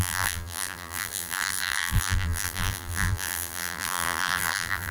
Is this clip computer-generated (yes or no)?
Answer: yes